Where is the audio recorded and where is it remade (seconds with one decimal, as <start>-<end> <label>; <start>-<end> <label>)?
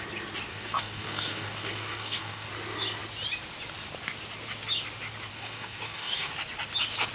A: 0.0-0.5 recorded; 0.5-2.5 remade; 2.5-5.3 recorded; 5.3-6.3 remade; 6.3-7.1 recorded